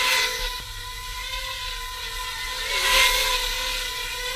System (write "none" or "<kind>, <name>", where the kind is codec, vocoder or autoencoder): none